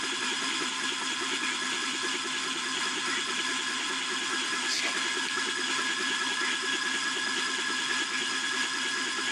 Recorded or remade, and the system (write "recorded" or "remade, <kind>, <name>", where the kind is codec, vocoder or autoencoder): recorded